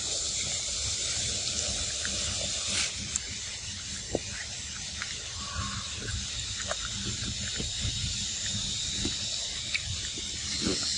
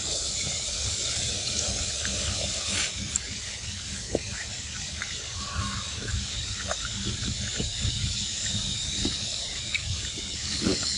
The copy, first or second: second